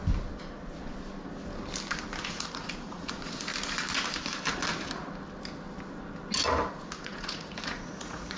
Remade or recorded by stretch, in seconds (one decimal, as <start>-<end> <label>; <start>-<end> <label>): 0.0-2.3 recorded; 2.3-3.5 remade; 3.5-6.7 recorded; 6.7-8.4 remade